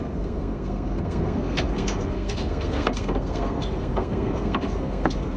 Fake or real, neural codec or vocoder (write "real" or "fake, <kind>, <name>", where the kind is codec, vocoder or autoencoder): fake, codec, SNAC